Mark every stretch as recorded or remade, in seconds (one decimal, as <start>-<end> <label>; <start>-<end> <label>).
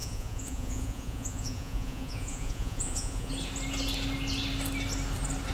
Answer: 0.0-3.3 remade; 3.3-5.5 recorded